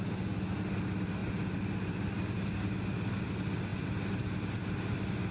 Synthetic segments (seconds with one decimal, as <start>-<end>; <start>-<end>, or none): none

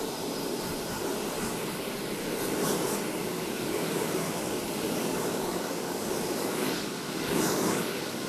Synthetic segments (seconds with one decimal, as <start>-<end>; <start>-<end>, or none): 3.2-8.3

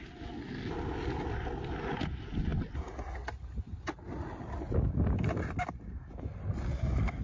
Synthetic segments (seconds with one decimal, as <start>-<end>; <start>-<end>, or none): none

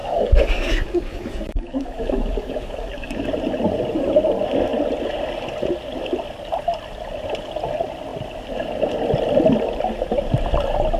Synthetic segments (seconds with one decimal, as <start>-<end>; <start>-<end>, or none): 0.0-3.3

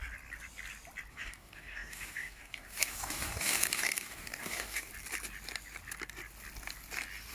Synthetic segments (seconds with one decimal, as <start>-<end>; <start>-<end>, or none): 1.1-4.9